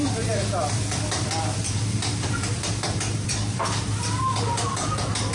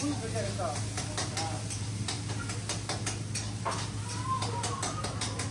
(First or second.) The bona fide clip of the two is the second